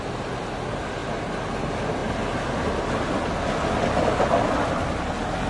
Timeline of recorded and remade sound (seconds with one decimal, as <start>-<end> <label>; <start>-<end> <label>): 0.0-5.5 recorded